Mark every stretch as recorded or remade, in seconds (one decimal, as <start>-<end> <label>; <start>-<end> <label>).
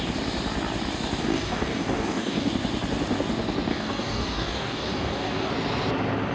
0.0-1.2 recorded; 1.2-2.5 remade; 2.5-3.7 recorded; 3.7-5.5 remade; 5.5-6.3 recorded